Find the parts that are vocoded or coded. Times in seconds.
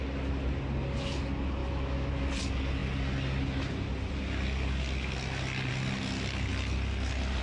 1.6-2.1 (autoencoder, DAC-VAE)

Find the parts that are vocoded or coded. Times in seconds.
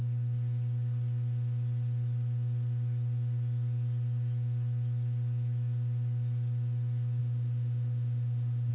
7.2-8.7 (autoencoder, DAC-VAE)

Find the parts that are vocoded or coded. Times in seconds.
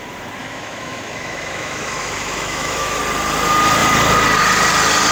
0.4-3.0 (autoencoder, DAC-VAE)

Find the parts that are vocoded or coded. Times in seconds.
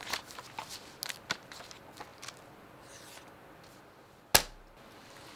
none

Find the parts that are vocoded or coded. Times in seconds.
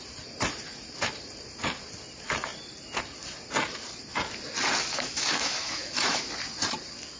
4.8-6.2 (autoencoder, DAC-VAE)